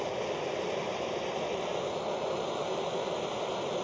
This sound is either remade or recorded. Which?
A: recorded